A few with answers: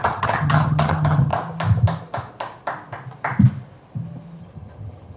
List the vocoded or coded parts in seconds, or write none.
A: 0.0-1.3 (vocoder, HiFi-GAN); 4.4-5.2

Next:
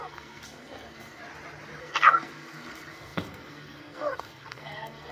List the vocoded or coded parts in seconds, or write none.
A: 0.0-1.2 (codec, SNAC); 1.8-5.1